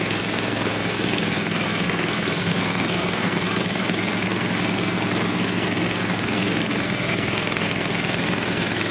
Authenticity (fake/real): fake